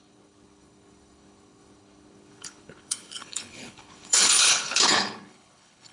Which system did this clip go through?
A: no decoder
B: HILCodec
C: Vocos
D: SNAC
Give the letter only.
B